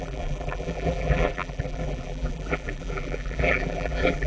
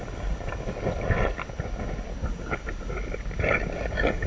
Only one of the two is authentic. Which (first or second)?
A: second